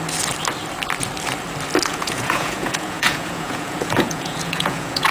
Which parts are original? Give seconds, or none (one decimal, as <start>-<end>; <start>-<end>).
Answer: 0.0-1.9